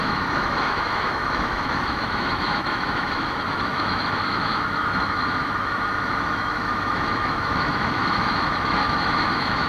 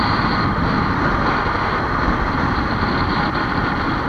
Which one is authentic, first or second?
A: second